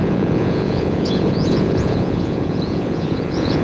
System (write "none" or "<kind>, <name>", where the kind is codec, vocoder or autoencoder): vocoder, Vocos